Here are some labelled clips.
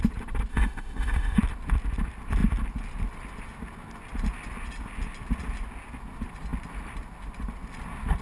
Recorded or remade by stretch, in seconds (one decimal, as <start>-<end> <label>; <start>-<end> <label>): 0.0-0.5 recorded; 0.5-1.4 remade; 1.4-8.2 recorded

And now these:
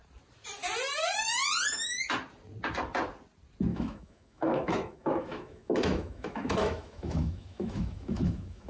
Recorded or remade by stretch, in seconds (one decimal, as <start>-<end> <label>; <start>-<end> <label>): 0.0-3.7 recorded; 3.7-8.7 remade

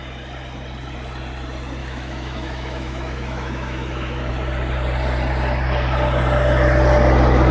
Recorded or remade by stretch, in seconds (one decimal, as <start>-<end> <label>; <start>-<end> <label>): 0.0-1.8 recorded; 1.8-4.3 remade; 4.3-7.5 recorded